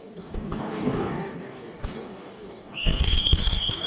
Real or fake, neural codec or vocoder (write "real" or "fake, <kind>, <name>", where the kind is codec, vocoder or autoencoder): fake, codec, DAC